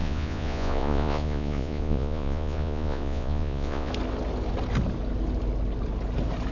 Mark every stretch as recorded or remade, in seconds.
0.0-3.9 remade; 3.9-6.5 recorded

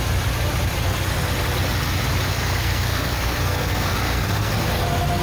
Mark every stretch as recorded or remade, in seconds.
0.0-2.3 recorded; 2.3-4.6 remade; 4.6-5.2 recorded

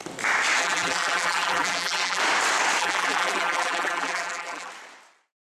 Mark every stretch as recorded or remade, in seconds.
0.0-0.6 recorded; 0.6-2.2 remade; 2.2-2.8 recorded; 2.8-4.7 remade; 4.7-5.6 recorded

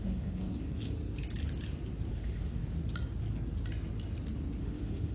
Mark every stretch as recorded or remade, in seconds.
0.0-0.5 remade; 0.5-2.1 recorded; 2.1-2.6 remade; 2.6-4.6 recorded; 4.6-5.1 remade

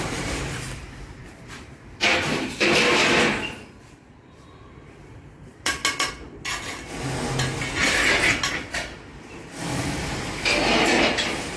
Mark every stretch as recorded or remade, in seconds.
0.0-3.0 remade; 3.0-3.9 recorded; 3.9-5.8 remade; 5.8-8.3 recorded; 8.3-11.6 remade

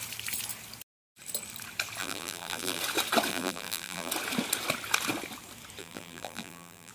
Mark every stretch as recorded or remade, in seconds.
0.0-2.0 recorded; 2.0-2.8 remade; 2.8-3.3 recorded; 3.3-4.1 remade; 4.1-5.8 recorded; 5.8-6.9 remade

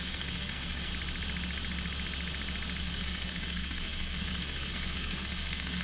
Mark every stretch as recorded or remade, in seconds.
0.0-0.9 remade; 0.9-2.8 recorded; 2.8-5.8 remade